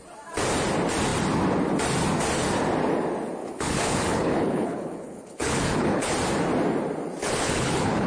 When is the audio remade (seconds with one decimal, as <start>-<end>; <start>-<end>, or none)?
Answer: 3.4-6.1; 7.2-8.1